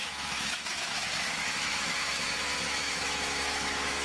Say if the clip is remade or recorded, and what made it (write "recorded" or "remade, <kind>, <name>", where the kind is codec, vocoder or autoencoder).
remade, autoencoder, DAC-VAE